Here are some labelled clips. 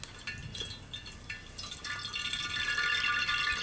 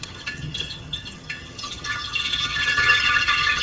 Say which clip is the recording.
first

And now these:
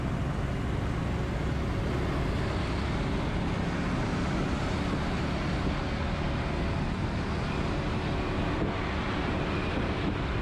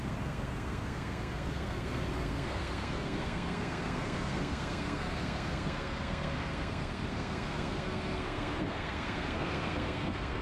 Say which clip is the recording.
first